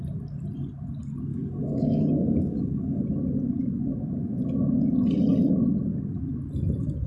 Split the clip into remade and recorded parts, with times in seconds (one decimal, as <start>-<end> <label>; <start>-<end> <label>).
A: 0.0-1.3 recorded; 1.3-3.0 remade; 3.0-7.1 recorded